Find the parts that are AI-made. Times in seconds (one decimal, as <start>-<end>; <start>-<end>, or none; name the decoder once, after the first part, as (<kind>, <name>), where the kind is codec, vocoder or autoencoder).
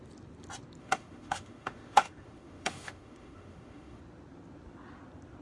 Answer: 0.8-4.0 (autoencoder, DAC-VAE)